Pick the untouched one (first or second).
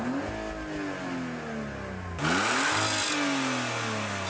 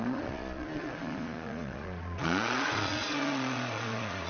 first